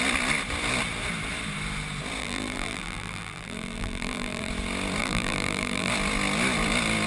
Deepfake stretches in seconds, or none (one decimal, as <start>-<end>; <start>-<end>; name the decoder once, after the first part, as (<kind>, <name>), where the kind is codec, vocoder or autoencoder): 2.2-4.5 (vocoder, BigVGAN v2); 5.0-5.9